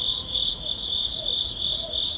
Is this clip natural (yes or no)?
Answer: no